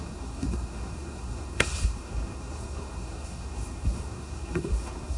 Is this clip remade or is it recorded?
remade